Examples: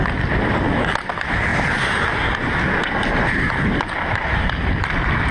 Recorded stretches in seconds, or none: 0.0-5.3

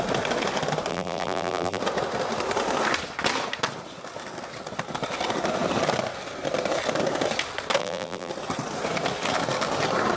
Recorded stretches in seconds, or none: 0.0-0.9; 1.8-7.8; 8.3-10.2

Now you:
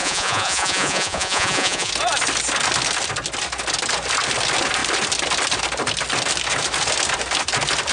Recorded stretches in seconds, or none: 1.9-7.9

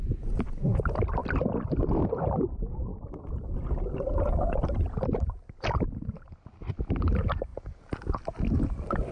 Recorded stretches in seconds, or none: 0.0-9.1

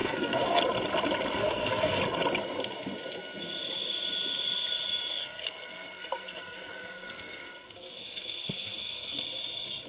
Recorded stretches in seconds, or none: 0.6-1.4; 2.0-5.2; 9.2-9.9

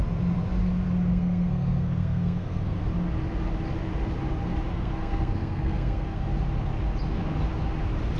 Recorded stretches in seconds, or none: 0.0-1.1; 2.8-4.7; 6.3-8.2

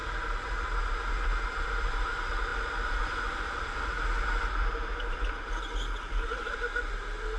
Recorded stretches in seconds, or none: 1.0-7.4

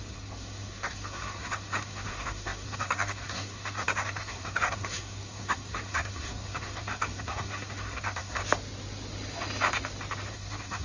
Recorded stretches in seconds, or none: 8.4-10.3